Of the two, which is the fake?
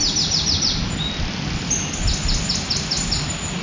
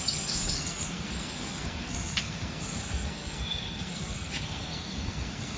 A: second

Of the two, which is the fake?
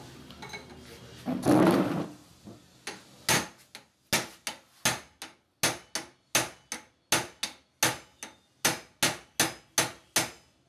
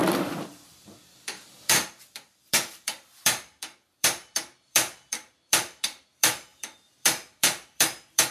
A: second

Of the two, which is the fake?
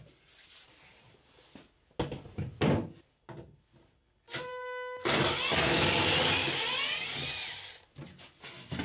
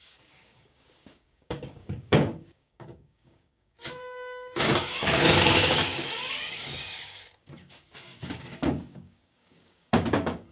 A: second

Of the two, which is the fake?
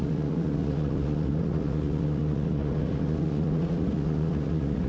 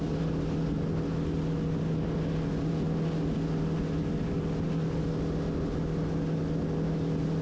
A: first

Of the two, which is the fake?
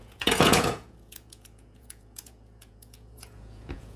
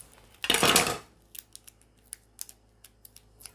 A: first